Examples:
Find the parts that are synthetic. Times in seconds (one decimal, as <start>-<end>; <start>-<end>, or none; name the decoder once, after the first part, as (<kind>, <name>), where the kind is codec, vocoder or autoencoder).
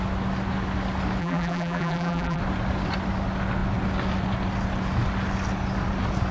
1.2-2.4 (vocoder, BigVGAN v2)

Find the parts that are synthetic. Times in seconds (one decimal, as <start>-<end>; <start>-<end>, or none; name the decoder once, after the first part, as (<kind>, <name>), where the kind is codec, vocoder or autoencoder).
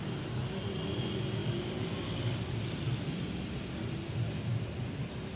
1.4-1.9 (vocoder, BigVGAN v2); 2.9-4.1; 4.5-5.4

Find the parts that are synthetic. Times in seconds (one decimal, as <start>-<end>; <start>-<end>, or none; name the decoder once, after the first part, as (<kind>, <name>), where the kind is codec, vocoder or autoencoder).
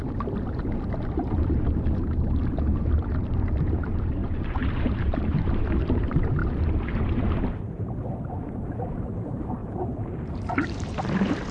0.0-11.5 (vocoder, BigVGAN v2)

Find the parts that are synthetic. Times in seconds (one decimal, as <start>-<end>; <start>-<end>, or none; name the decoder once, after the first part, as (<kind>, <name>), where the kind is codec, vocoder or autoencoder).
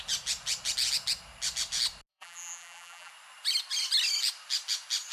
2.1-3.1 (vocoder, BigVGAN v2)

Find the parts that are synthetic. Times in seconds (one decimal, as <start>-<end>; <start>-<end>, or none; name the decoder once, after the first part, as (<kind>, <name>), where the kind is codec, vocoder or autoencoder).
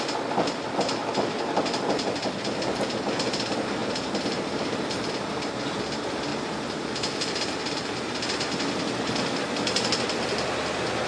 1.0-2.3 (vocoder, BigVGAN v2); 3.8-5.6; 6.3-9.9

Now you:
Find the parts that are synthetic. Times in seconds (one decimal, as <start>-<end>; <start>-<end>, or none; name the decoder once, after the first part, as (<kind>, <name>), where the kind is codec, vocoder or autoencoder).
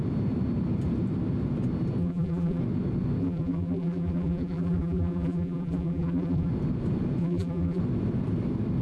2.0-2.6 (vocoder, BigVGAN v2); 3.2-6.5; 7.2-7.8